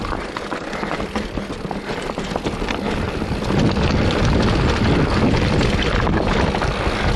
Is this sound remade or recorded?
recorded